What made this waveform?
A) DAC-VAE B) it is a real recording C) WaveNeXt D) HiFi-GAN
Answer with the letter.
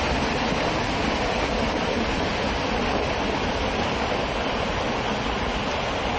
B